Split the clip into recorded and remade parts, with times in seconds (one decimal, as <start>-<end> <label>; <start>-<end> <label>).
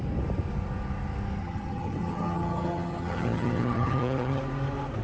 0.0-1.4 recorded; 1.4-4.4 remade; 4.4-5.0 recorded